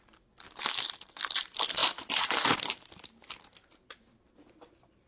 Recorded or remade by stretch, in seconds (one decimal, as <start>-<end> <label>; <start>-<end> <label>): 0.0-5.1 recorded